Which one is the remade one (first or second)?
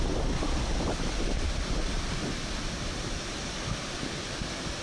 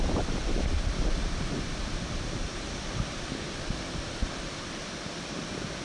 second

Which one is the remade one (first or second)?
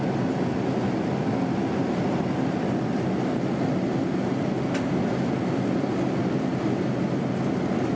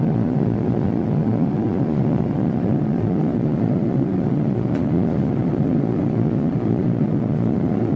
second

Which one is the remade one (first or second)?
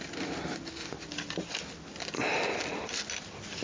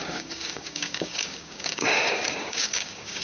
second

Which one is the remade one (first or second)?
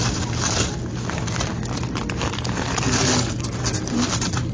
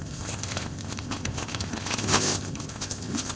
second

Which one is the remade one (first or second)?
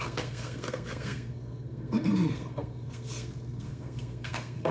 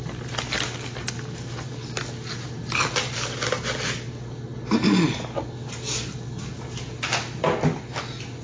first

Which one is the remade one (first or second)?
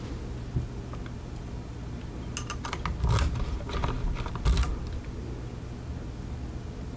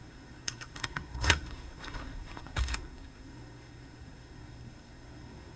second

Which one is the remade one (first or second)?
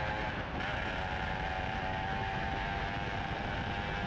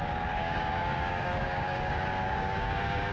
second